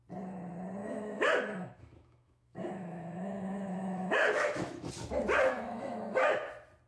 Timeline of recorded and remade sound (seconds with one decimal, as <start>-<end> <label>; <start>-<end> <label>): 0.0-0.8 recorded; 0.8-4.9 remade; 4.9-5.4 recorded; 5.4-6.0 remade; 6.0-6.9 recorded